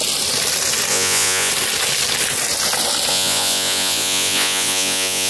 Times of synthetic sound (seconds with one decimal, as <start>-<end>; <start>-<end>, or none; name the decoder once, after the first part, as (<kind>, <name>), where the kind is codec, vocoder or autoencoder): 0.9-1.5 (vocoder, Vocos); 3.1-5.3